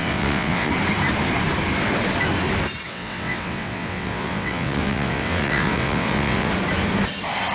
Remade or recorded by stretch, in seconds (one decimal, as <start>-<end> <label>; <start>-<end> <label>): 0.0-0.7 remade; 0.7-2.9 recorded; 2.9-6.5 remade; 6.5-7.5 recorded